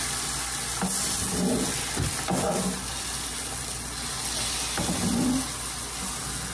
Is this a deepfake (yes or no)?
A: no